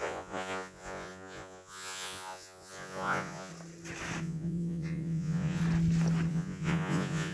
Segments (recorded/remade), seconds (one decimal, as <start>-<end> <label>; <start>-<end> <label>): 0.0-3.5 remade; 3.5-4.2 recorded; 4.2-5.6 remade; 5.6-6.3 recorded; 6.3-7.3 remade